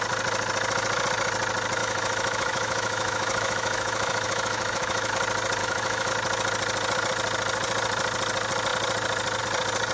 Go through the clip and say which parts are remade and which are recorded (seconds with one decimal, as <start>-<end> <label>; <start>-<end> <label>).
0.0-1.8 recorded; 1.8-5.1 remade; 5.1-5.6 recorded; 5.6-6.1 remade; 6.1-9.9 recorded